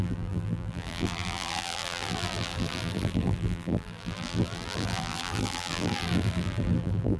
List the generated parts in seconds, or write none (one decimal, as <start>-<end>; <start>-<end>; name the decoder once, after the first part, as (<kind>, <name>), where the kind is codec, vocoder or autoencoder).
0.0-7.2 (vocoder, BigVGAN v2)

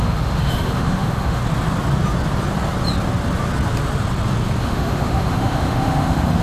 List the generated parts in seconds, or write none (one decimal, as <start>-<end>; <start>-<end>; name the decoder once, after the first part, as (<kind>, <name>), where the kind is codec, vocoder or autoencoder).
0.0-1.4 (autoencoder, DAC-VAE); 4.6-6.4